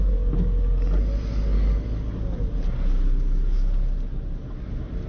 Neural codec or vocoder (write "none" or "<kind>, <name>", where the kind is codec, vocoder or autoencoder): none